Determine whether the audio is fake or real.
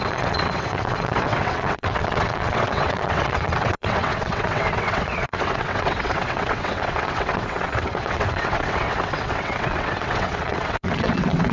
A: fake